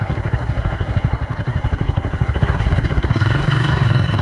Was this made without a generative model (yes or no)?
no